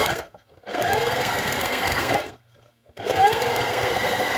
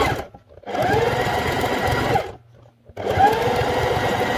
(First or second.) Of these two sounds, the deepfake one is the first